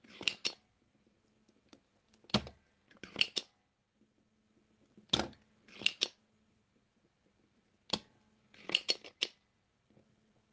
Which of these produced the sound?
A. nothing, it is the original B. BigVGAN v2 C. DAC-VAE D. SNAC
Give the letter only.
A